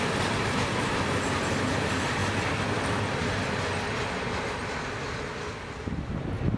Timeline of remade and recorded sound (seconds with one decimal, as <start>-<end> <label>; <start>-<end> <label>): 0.0-6.6 recorded